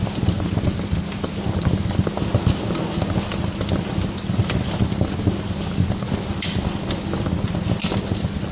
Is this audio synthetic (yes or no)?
no